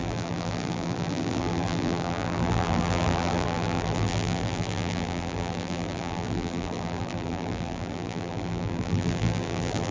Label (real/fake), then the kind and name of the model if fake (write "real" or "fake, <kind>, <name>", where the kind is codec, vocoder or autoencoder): fake, vocoder, BigVGAN v2